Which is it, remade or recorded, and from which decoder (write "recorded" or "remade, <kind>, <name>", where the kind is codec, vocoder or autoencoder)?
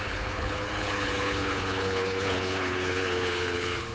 remade, codec, HILCodec